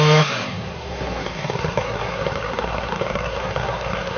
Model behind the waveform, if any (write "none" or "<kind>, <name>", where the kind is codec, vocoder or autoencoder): codec, SNAC